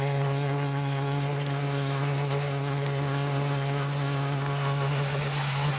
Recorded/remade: remade